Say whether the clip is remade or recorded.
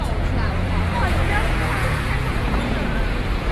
remade